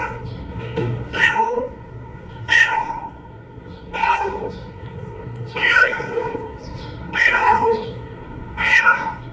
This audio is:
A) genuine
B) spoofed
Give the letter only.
B